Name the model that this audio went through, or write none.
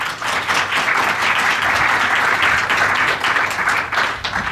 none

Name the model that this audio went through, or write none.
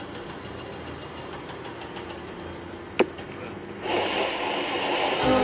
none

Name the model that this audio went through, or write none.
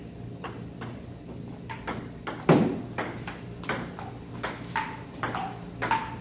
none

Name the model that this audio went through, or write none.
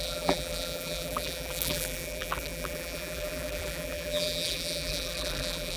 vocoder, BigVGAN v2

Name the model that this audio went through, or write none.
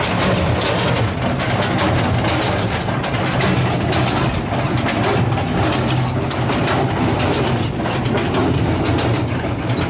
none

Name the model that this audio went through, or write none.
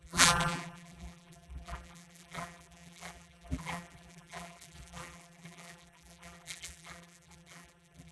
vocoder, BigVGAN v2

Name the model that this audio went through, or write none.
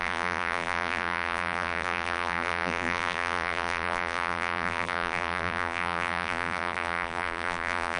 vocoder, BigVGAN v2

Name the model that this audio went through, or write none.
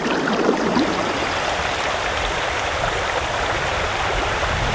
vocoder, BigVGAN v2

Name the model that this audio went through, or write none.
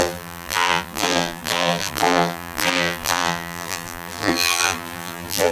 vocoder, BigVGAN v2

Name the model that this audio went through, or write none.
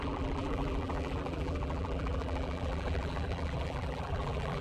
vocoder, BigVGAN v2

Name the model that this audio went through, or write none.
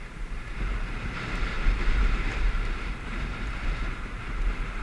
vocoder, BigVGAN v2